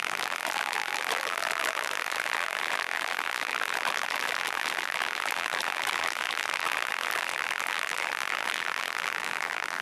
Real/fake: fake